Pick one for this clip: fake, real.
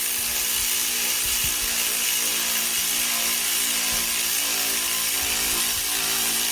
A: real